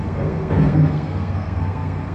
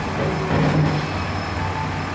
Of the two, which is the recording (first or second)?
second